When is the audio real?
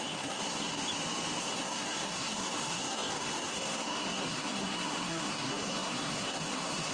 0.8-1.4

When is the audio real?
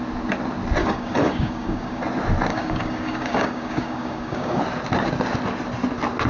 0.0-0.8; 2.0-2.5; 4.6-6.3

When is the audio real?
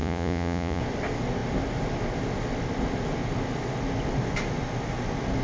0.8-5.4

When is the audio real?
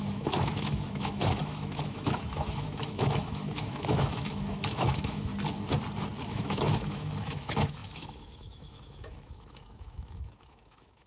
5.3-6.3